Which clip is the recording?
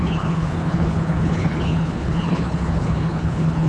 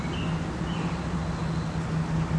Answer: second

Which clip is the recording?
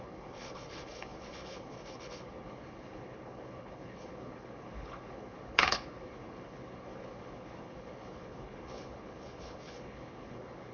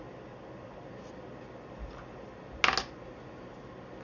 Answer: second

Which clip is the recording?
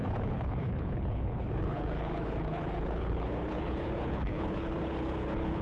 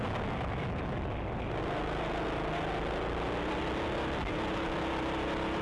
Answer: second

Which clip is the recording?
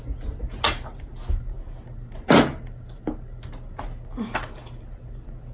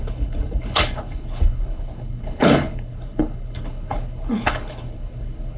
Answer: first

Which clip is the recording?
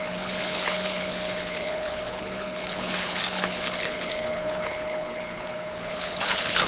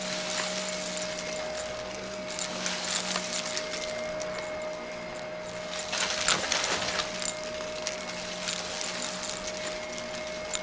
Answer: second